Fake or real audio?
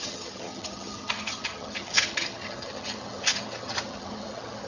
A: fake